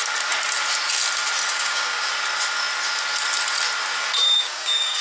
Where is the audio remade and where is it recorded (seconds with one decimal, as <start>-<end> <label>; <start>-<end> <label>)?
0.0-1.5 recorded; 1.5-2.1 remade; 2.1-4.2 recorded; 4.2-5.0 remade